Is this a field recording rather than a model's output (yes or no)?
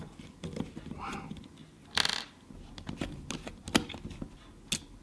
yes